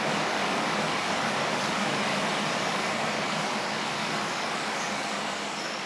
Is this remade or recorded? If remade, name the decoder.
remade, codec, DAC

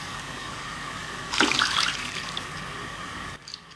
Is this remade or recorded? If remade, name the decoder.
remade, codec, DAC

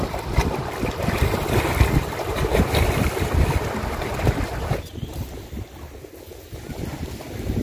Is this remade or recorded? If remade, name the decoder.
recorded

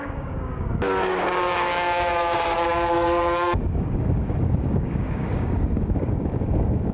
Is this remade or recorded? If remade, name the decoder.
remade, codec, DAC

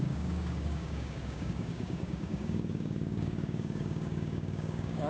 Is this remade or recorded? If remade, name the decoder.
remade, codec, DAC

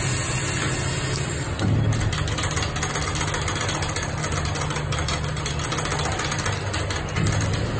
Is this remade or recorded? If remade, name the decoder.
recorded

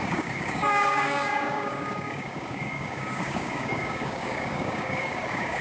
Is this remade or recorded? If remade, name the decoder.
remade, codec, DAC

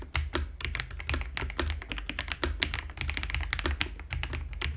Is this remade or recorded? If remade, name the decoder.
recorded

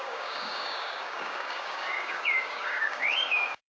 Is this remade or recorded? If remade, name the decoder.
remade, codec, DAC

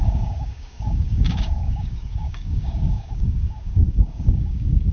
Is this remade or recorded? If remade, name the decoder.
remade, codec, DAC